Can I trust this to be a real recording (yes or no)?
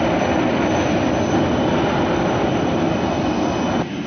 yes